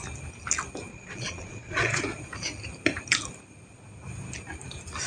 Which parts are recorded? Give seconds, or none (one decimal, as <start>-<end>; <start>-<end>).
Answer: 0.0-0.9; 2.0-5.1